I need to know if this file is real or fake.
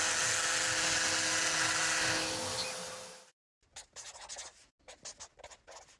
real